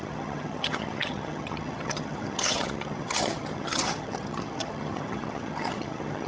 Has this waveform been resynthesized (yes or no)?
yes